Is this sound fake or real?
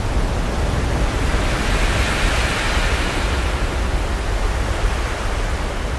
real